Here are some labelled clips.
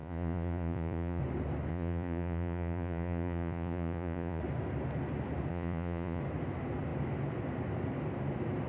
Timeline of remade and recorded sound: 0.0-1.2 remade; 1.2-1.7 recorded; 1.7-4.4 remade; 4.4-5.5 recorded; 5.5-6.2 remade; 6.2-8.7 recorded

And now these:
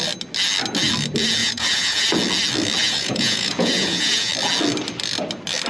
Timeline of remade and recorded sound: 0.0-1.4 recorded; 1.4-2.1 remade; 2.1-2.8 recorded; 2.8-4.3 remade; 4.3-5.7 recorded

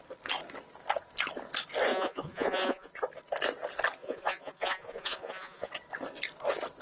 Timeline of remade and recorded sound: 0.0-1.9 recorded; 1.9-2.9 remade; 2.9-4.0 recorded; 4.0-5.7 remade; 5.7-6.8 recorded